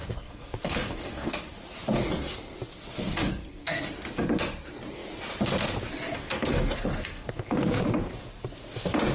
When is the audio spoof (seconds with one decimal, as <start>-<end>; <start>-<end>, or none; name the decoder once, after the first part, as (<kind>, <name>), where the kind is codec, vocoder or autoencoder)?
0.0-1.3 (codec, SNAC); 3.3-3.8; 6.2-7.8